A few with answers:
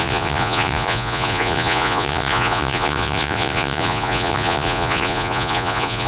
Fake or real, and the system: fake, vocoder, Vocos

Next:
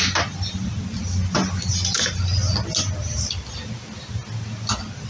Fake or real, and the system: real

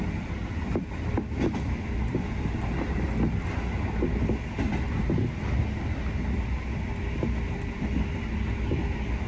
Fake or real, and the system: real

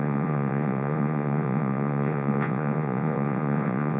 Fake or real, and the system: fake, vocoder, Vocos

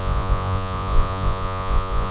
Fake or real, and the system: fake, vocoder, Vocos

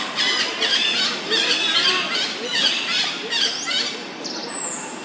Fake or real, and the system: real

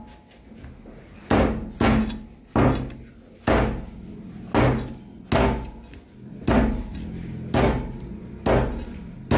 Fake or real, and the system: real